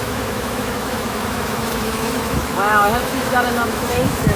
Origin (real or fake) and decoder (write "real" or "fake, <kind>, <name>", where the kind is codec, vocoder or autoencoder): fake, autoencoder, DAC-VAE